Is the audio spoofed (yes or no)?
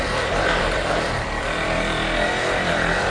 yes